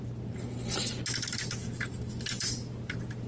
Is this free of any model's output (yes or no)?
yes